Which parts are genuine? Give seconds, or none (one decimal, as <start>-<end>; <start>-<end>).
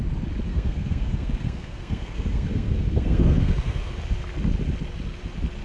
0.0-0.5; 3.9-5.6